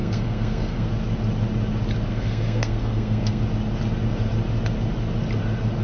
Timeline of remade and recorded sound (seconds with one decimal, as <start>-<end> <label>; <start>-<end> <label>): 0.0-0.9 remade; 0.9-2.1 recorded; 2.1-3.4 remade; 3.4-5.8 recorded